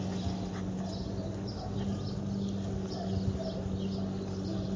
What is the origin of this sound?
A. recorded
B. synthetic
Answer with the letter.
A